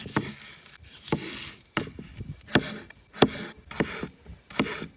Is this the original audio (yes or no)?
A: yes